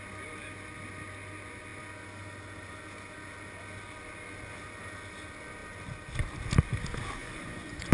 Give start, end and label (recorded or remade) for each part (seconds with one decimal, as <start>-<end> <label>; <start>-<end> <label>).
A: 0.0-7.2 recorded; 7.2-7.9 remade